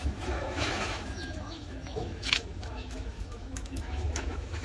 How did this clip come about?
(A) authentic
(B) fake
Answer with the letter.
B